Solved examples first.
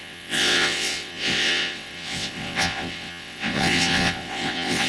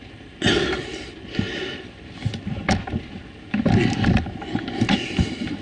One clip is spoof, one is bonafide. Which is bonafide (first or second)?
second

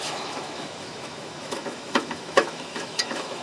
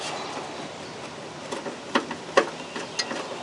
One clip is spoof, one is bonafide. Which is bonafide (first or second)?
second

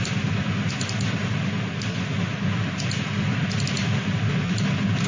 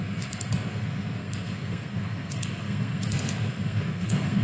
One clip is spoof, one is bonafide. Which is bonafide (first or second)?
first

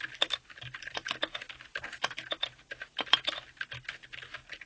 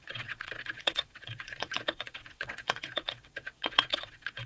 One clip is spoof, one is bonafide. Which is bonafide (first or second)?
first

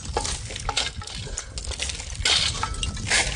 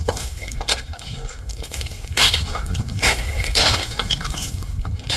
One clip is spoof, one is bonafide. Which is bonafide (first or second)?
first